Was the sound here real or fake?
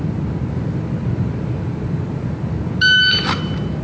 real